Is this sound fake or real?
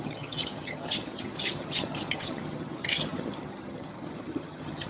fake